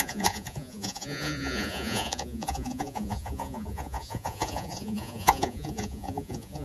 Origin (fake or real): fake